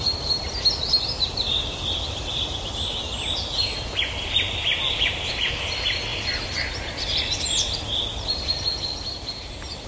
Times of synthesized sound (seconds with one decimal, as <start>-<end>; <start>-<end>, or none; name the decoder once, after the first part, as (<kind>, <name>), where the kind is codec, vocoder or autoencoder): none